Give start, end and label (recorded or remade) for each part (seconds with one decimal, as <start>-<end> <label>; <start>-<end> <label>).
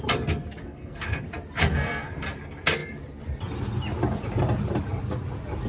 0.0-0.6 recorded; 0.6-1.2 remade; 1.2-1.6 recorded; 1.6-2.1 remade; 2.1-5.7 recorded